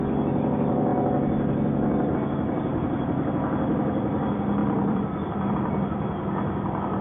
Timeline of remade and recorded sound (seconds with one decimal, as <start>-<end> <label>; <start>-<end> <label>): 0.0-2.7 recorded; 2.7-3.3 remade; 3.3-4.6 recorded; 4.6-5.5 remade; 5.5-7.0 recorded